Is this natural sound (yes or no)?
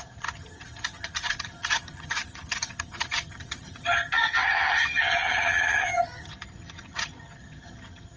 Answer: no